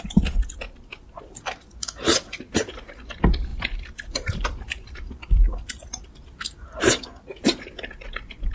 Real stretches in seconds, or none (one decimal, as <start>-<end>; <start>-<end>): 0.0-3.5; 6.8-8.5